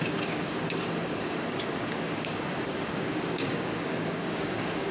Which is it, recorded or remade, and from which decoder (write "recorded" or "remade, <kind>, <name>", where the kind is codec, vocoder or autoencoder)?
remade, codec, DAC